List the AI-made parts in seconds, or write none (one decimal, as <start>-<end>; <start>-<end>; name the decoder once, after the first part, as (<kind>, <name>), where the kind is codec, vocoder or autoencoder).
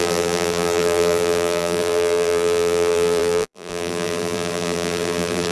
0.0-5.5 (vocoder, BigVGAN v2)